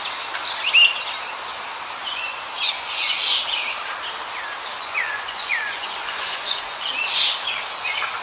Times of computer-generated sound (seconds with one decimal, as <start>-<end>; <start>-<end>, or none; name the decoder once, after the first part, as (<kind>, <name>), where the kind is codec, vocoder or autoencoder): 2.0-3.2 (vocoder, Vocos); 4.8-6.9